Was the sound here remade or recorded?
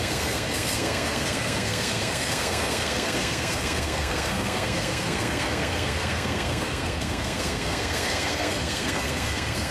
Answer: remade